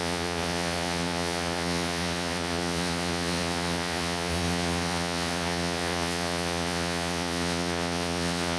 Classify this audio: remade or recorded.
remade